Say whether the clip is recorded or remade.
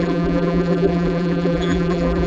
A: remade